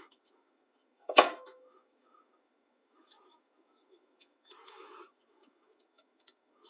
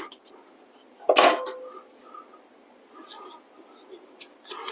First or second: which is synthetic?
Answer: first